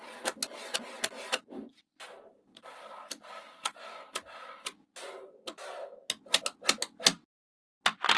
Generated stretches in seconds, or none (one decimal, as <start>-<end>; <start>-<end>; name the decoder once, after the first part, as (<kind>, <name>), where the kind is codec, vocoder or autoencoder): none